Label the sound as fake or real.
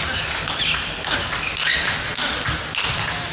real